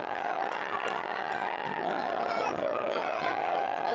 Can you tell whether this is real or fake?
fake